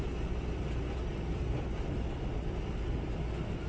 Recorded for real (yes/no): yes